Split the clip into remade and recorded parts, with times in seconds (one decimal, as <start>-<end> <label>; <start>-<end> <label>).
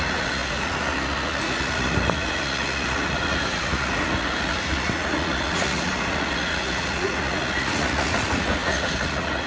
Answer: 0.0-9.5 remade